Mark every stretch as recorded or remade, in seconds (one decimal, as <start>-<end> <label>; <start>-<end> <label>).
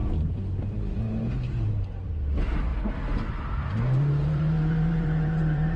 0.0-2.7 remade; 2.7-3.4 recorded; 3.4-5.8 remade